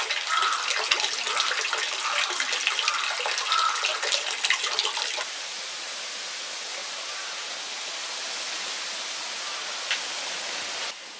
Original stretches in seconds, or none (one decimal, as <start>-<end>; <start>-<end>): 0.0-11.2